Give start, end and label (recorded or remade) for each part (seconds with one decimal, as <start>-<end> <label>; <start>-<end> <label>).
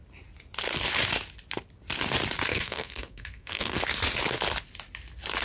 0.0-2.5 recorded; 2.5-3.8 remade; 3.8-5.4 recorded